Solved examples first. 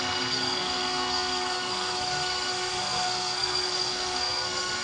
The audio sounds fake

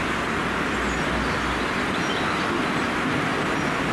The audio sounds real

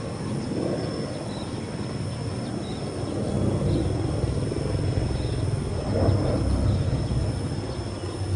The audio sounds real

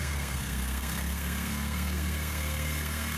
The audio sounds fake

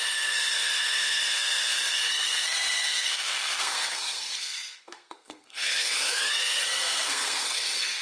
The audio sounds fake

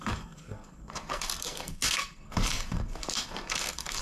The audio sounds fake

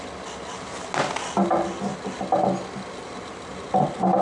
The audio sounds real